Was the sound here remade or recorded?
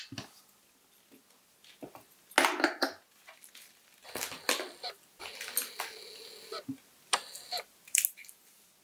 recorded